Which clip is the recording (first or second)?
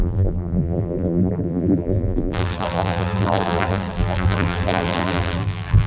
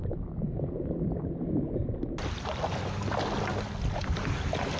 second